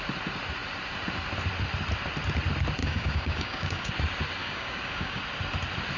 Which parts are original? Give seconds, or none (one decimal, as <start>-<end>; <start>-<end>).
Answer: 0.0-2.8; 3.9-4.4; 5.2-6.0